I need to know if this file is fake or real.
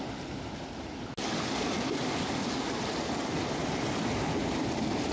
real